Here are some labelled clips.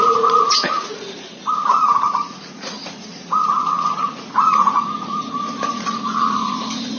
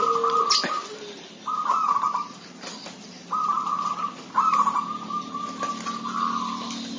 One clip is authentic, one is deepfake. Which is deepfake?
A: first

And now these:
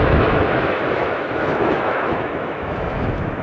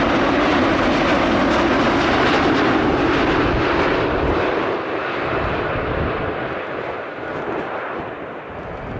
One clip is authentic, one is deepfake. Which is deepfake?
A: first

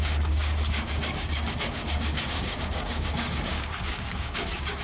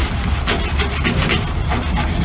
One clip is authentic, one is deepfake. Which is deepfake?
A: first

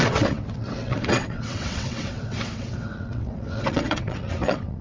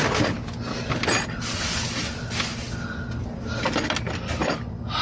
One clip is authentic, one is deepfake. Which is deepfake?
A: first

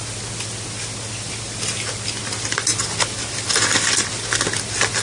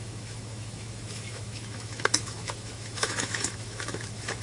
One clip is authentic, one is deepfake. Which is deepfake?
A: second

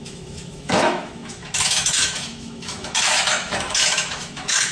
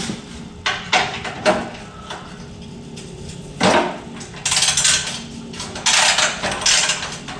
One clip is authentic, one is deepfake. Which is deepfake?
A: first